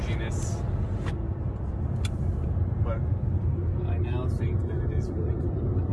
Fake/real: real